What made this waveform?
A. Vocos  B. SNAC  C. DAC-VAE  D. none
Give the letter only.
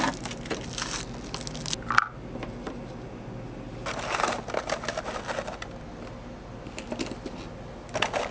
D